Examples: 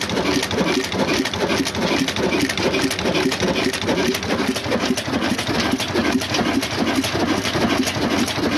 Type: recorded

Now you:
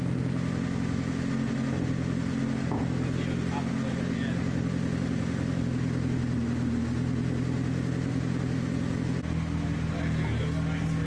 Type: recorded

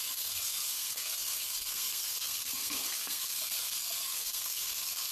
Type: remade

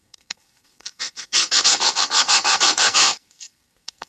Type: remade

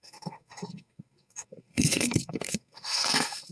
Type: remade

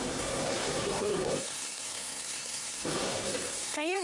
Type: remade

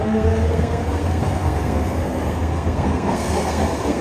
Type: remade